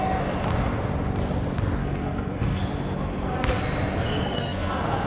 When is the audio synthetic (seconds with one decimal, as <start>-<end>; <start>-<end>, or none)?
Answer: 1.8-2.6; 4.1-5.1

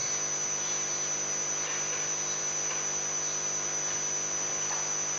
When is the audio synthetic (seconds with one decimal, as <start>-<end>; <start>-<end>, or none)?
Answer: none

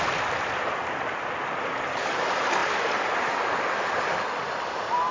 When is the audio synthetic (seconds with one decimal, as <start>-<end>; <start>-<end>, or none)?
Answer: none

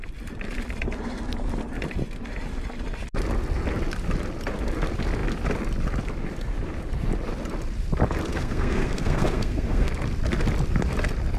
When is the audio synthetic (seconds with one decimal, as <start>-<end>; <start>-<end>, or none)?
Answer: 8.3-9.9

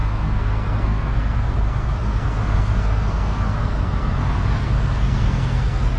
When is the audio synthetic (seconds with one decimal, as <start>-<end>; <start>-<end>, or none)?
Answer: 0.0-6.0

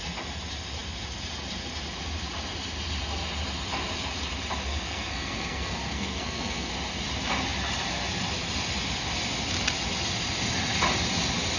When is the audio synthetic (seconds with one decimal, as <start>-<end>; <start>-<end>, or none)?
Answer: 4.7-6.7

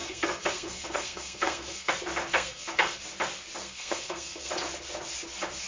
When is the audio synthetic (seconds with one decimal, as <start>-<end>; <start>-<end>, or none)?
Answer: 0.0-1.9; 2.3-3.0; 3.6-4.5